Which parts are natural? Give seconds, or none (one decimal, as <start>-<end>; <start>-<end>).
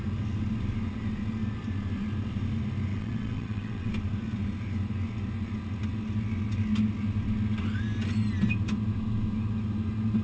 0.0-2.9; 3.9-10.2